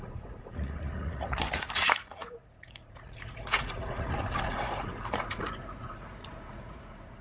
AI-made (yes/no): yes